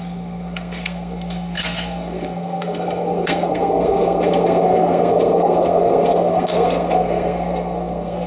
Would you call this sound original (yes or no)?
no